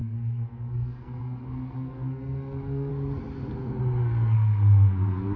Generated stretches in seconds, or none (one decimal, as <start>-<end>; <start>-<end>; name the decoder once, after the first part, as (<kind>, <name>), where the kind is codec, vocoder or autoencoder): 0.0-2.9 (codec, SNAC); 4.0-5.4